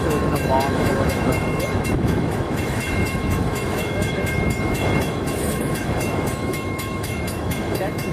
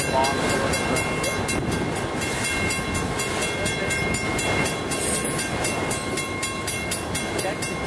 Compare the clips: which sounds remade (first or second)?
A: first